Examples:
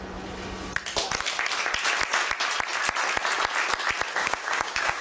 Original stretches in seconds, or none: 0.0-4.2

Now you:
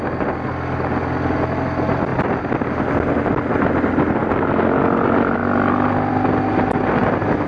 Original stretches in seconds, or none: 0.0-7.5

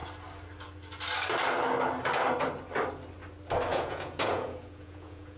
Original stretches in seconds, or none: 0.0-3.7

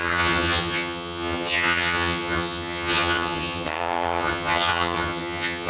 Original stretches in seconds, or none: none

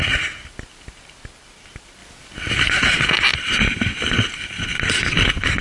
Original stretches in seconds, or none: 0.0-5.6

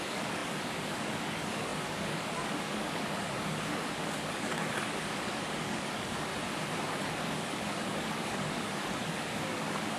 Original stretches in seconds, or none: 6.3-6.9

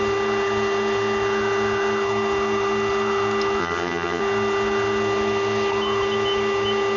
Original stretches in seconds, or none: 0.0-3.6; 4.2-7.0